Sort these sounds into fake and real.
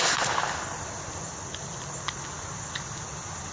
real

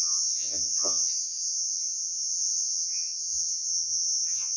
fake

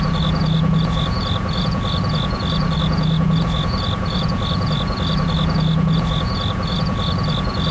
fake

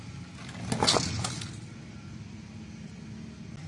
real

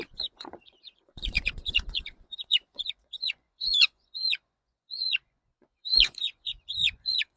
fake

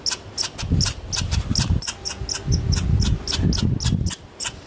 real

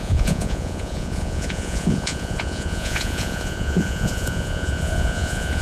fake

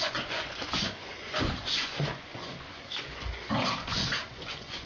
fake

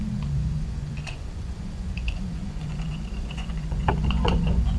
fake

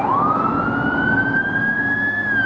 real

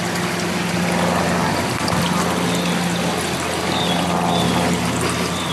real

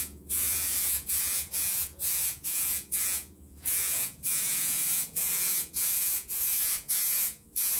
fake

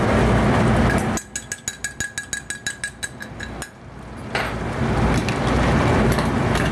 real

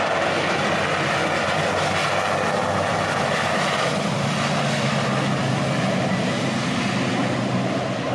real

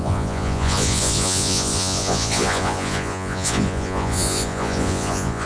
fake